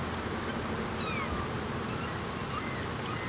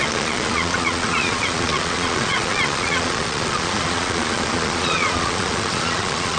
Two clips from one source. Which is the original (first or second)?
first